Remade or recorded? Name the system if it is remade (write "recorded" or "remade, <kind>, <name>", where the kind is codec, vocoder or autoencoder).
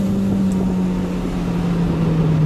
recorded